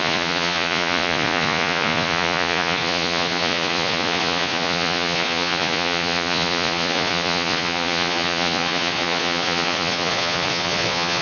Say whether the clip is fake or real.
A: fake